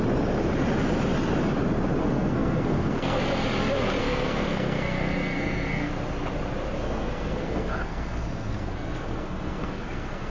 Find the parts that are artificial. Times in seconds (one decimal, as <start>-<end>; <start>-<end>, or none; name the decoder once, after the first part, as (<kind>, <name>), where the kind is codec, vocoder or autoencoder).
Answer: 2.0-3.2 (codec, SNAC); 4.0-5.9; 6.8-10.3